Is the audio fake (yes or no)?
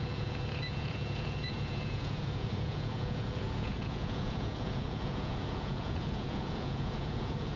yes